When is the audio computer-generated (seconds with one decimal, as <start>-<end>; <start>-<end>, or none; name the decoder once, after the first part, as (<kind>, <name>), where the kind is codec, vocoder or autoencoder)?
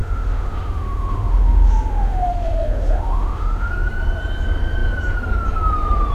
0.0-3.7 (autoencoder, DAC-VAE)